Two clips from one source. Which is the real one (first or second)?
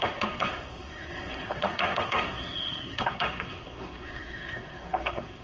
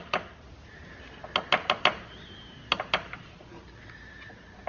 second